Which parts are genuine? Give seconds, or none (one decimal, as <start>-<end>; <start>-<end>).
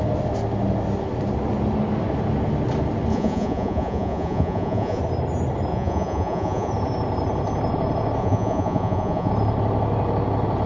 0.0-3.1; 5.0-5.7; 6.7-8.2; 9.3-10.7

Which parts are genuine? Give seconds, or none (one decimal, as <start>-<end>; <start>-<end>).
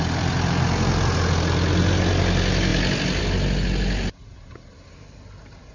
0.0-5.7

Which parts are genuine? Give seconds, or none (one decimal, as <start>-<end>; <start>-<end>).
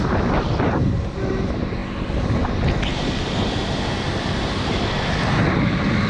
0.0-6.1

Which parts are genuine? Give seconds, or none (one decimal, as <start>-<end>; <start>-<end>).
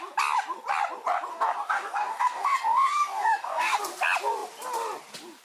0.0-1.3; 3.8-5.4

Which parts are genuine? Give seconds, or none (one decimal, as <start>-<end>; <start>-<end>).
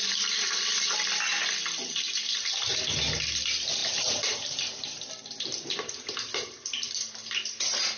0.0-8.0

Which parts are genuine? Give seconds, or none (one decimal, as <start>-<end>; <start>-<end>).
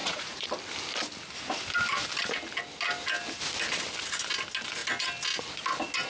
0.5-6.1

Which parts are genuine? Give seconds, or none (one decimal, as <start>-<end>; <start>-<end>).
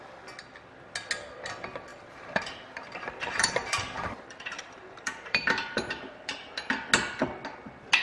0.0-1.9; 6.7-8.0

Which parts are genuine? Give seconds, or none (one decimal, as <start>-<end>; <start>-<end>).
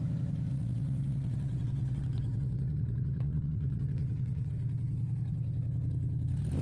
0.0-0.5; 4.5-6.6